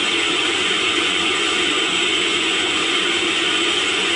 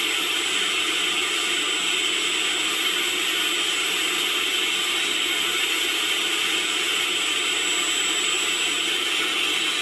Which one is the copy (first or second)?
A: first